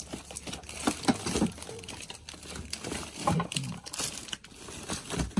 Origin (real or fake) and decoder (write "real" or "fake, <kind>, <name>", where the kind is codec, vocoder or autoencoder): real